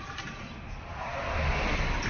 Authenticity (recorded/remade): recorded